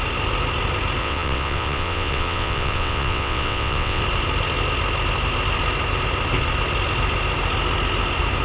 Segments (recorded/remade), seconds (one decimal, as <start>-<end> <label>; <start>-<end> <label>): 0.0-1.0 recorded; 1.0-4.0 remade; 4.0-8.4 recorded